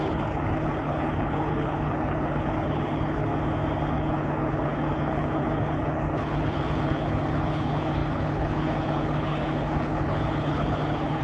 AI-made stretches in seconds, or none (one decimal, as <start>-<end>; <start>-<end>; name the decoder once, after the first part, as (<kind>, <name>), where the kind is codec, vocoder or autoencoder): 0.0-3.3 (codec, HILCodec); 3.9-11.2